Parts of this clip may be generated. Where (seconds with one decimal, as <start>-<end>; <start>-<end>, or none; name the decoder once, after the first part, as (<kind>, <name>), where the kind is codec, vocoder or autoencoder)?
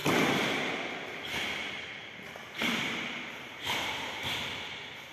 3.1-4.2 (vocoder, BigVGAN v2)